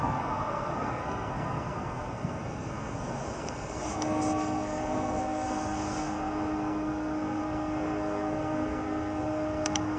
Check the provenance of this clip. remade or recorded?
remade